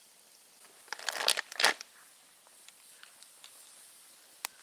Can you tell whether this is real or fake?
real